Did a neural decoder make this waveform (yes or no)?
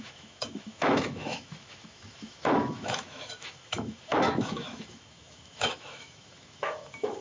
yes